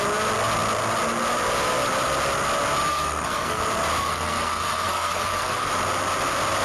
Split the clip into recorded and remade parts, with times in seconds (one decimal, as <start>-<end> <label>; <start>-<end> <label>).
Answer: 0.0-2.9 recorded; 2.9-3.6 remade; 3.6-4.0 recorded; 4.0-5.7 remade; 5.7-6.6 recorded